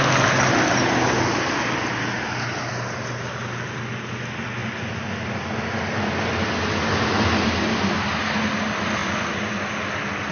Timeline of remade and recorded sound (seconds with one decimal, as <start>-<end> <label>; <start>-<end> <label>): 0.0-10.3 recorded

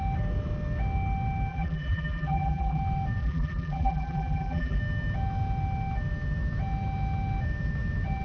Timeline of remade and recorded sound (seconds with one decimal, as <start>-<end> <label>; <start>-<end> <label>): 0.0-1.5 recorded; 1.5-2.8 remade; 2.8-3.2 recorded; 3.2-4.8 remade; 4.8-8.2 recorded

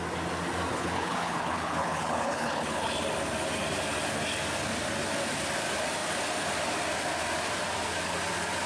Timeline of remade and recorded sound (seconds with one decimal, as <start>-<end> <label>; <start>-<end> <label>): 0.0-0.7 recorded; 0.7-2.9 remade; 2.9-8.7 recorded

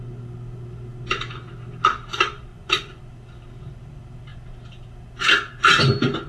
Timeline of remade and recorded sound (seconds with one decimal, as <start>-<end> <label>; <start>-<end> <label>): 0.0-2.5 recorded; 2.5-3.0 remade; 3.0-6.3 recorded

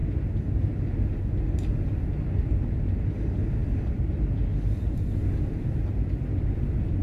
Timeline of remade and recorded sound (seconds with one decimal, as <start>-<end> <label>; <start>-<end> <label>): 0.0-3.6 recorded; 3.6-4.4 remade; 4.4-7.0 recorded